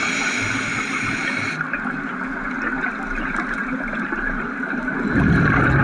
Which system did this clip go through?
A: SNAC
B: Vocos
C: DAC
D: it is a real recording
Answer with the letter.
D